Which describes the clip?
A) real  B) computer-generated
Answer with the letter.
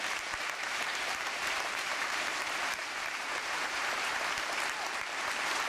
B